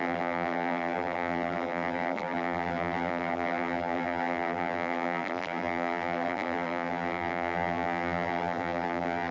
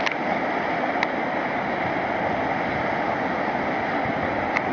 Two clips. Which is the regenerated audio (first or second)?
first